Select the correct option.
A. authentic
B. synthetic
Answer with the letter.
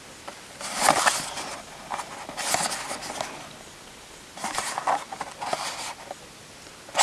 A